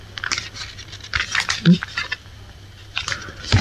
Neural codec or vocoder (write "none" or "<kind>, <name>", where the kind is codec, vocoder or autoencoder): none